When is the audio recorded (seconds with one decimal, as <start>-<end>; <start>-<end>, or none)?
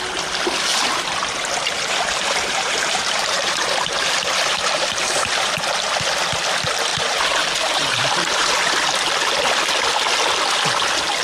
0.0-0.7; 5.5-6.9; 8.5-11.2